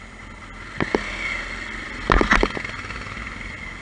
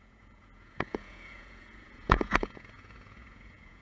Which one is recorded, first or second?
first